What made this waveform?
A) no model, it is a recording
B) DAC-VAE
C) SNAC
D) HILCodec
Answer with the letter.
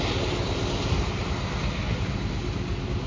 A